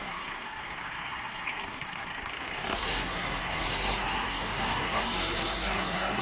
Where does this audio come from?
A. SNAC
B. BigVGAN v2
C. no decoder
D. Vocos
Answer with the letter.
A